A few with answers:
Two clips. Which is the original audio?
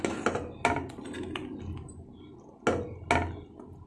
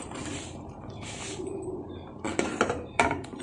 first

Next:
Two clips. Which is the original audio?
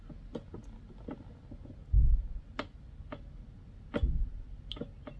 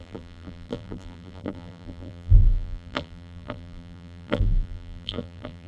first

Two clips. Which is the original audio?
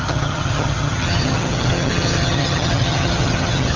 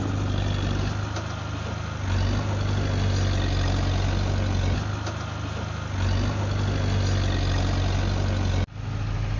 second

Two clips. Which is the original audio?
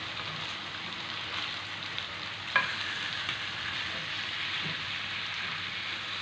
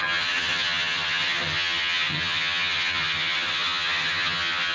first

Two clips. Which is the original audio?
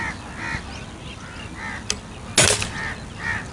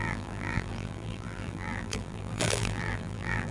first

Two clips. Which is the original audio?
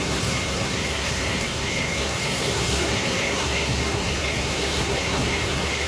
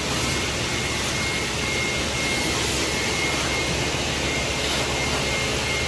second